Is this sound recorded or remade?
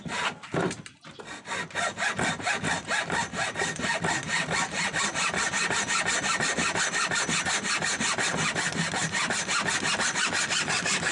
recorded